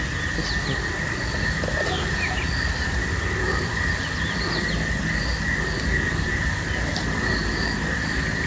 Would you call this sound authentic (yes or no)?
yes